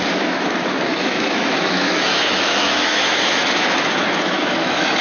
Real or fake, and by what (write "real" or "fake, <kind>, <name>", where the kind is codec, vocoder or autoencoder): fake, autoencoder, DAC-VAE